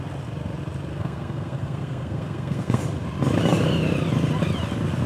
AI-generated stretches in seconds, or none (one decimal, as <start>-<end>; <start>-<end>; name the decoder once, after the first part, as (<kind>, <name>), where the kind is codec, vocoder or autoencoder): 0.9-2.8 (codec, SNAC)